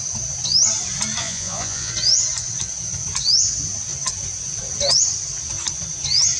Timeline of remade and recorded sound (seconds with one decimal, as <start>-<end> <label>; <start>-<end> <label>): 0.0-1.2 recorded; 1.2-1.9 remade; 1.9-6.4 recorded